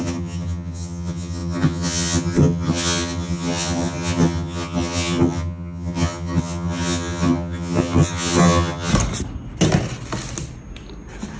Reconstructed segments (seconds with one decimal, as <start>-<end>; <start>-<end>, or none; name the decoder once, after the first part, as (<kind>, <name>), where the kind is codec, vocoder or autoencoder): 0.0-8.9 (vocoder, HiFi-GAN)